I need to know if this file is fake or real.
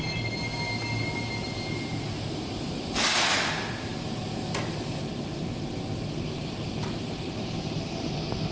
real